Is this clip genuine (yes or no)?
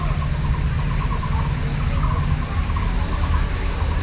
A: yes